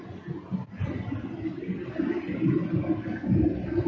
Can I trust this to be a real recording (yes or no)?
yes